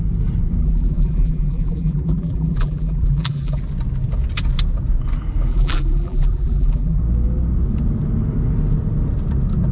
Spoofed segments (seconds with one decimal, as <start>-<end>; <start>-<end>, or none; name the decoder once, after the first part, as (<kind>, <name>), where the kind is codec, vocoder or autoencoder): 0.6-3.6 (vocoder, BigVGAN v2); 5.5-7.0